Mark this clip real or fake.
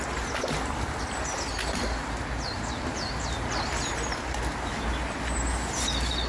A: real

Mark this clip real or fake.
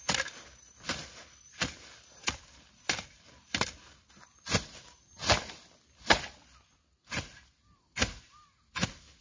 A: real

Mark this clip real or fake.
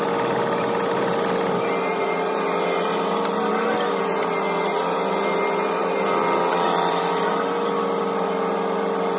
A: real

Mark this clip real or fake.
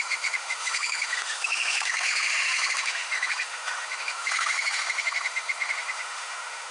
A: fake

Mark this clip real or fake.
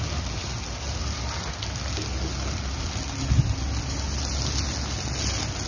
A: real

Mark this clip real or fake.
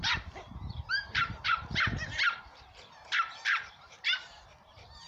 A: fake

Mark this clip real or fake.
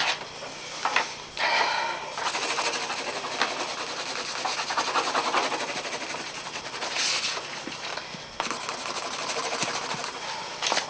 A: real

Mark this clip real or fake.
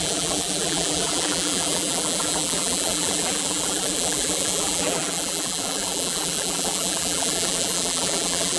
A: fake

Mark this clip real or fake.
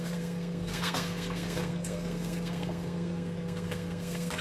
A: fake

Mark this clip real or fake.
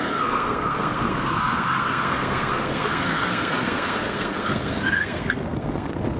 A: fake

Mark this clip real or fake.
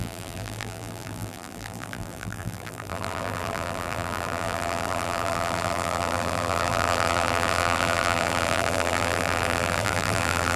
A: fake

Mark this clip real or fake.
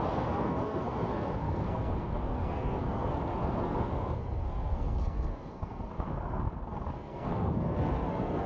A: fake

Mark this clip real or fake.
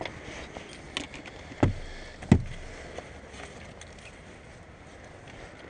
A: real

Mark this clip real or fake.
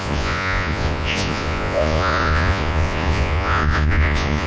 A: fake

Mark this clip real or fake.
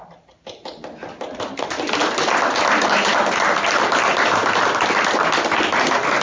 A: real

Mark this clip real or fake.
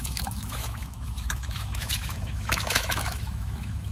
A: fake